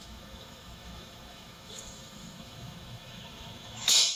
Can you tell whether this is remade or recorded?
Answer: remade